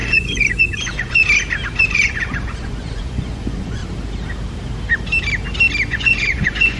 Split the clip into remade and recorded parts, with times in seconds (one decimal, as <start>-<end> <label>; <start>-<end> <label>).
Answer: 0.0-1.2 remade; 1.2-1.8 recorded; 1.8-3.8 remade; 3.8-5.9 recorded; 5.9-6.8 remade